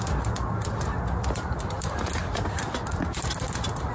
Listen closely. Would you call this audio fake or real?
real